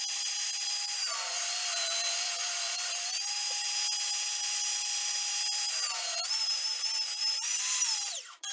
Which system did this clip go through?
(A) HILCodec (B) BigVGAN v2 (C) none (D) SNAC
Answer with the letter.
B